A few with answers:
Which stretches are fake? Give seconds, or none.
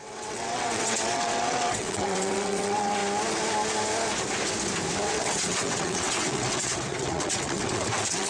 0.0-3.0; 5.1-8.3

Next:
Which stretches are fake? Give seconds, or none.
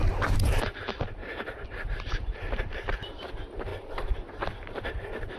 1.2-3.3; 3.7-5.4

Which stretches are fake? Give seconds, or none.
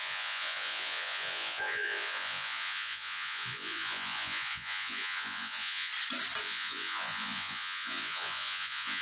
0.0-5.9; 6.4-9.0